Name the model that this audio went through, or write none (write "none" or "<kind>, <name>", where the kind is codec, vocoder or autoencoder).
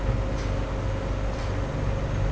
none